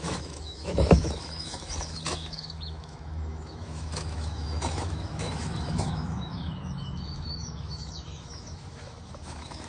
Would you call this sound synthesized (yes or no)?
yes